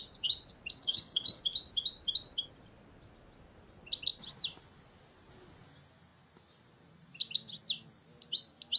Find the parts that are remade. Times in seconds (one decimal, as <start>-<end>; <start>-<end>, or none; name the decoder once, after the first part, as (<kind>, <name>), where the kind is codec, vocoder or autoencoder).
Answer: 0.8-1.4 (codec, SNAC)